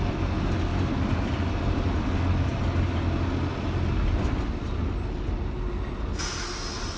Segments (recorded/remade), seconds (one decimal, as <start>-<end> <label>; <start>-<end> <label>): 0.0-7.0 recorded